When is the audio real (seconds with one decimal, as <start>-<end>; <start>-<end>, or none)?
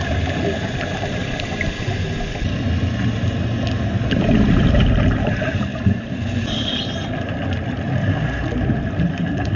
0.0-9.6